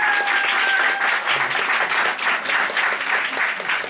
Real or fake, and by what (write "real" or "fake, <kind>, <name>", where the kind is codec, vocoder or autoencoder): real